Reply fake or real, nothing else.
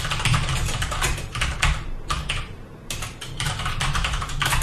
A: fake